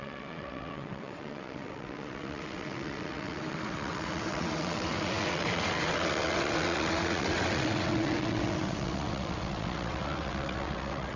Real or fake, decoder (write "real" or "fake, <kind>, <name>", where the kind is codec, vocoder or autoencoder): fake, vocoder, WaveNeXt